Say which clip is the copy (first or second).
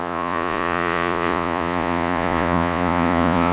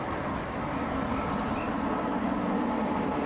first